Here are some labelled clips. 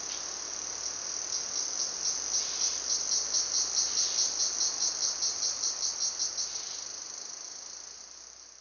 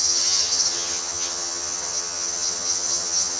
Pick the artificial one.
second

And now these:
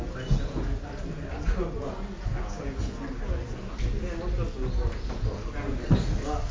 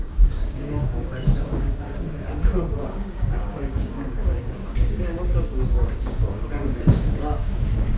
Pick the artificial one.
second